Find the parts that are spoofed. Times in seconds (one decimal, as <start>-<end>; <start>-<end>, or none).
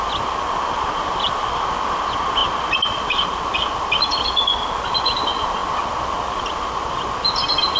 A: none